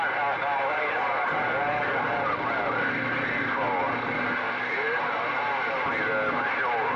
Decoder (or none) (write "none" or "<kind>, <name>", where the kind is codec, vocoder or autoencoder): none